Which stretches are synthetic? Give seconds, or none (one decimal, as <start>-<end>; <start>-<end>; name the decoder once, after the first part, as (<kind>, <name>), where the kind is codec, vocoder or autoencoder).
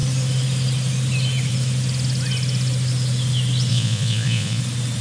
3.7-4.6 (vocoder, Vocos)